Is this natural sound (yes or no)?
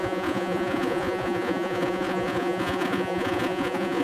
no